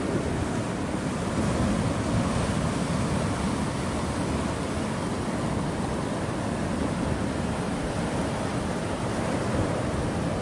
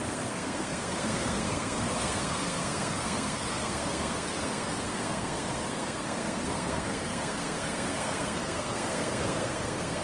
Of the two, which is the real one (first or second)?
first